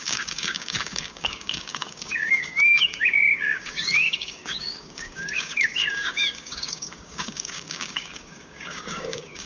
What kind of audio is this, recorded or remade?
remade